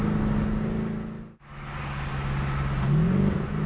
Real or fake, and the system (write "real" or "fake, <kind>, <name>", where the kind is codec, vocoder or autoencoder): real